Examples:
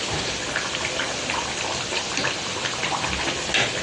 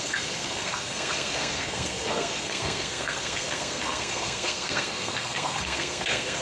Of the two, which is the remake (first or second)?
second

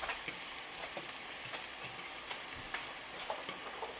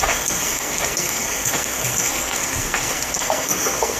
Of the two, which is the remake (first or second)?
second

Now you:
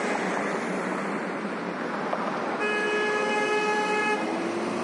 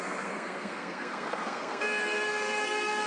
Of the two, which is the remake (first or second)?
second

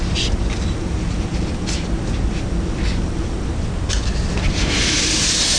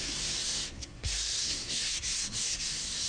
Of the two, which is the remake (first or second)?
second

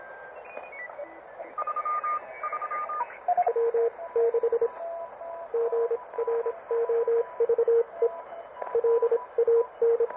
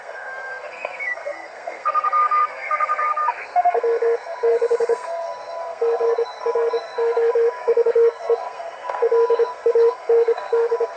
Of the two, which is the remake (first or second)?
second